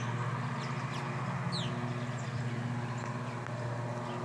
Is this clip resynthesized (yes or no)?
no